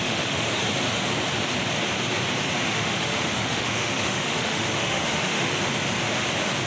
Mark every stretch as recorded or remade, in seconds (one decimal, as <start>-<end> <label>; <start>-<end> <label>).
0.0-0.6 remade; 0.6-2.7 recorded; 2.7-5.5 remade; 5.5-6.7 recorded